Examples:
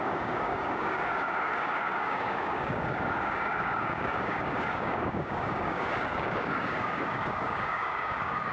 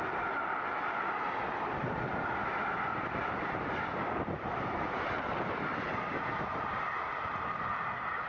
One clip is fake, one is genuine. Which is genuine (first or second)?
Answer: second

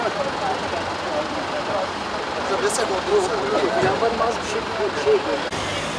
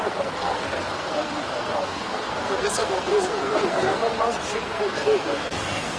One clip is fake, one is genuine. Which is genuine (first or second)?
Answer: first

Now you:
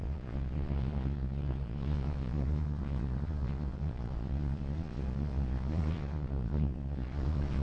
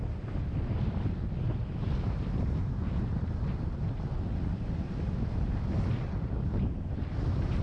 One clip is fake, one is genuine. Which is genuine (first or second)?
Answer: second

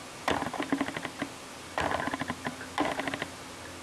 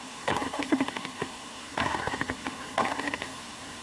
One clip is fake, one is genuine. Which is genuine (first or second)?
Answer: first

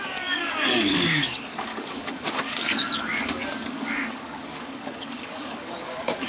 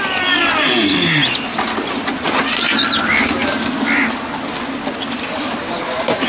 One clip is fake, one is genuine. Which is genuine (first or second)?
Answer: second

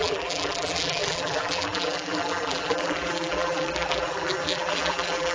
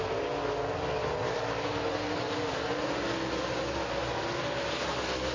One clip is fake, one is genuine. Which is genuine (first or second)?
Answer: second